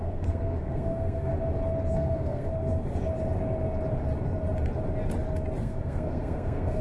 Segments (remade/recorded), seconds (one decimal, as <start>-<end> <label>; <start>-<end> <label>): 0.0-1.3 remade; 1.3-1.9 recorded; 1.9-2.5 remade; 2.5-5.6 recorded; 5.6-6.8 remade